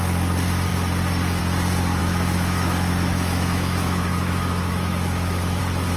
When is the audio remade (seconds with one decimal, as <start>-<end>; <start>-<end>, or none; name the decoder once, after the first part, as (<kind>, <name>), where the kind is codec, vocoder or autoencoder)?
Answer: 2.0-5.6 (autoencoder, DAC-VAE)